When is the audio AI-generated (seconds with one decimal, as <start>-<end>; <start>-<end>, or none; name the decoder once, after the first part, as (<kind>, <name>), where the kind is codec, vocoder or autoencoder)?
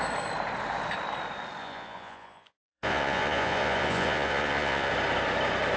1.6-4.9 (vocoder, Vocos)